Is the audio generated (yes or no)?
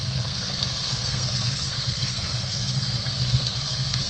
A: yes